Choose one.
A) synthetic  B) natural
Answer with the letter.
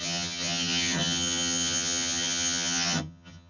A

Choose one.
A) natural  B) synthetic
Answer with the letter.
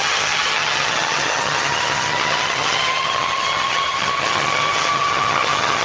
B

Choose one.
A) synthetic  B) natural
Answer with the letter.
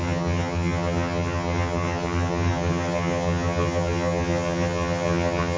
A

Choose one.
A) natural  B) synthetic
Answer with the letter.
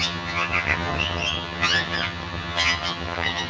B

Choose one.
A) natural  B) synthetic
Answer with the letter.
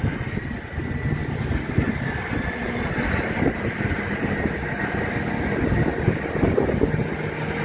A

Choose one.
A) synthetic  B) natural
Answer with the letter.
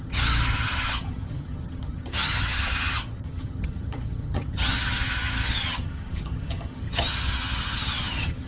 A